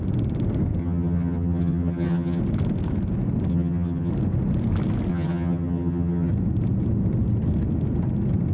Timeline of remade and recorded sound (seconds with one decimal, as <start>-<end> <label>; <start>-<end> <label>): 0.0-0.8 recorded; 0.8-2.4 remade; 2.4-3.5 recorded; 3.5-4.1 remade; 4.1-5.1 recorded; 5.1-6.3 remade; 6.3-8.5 recorded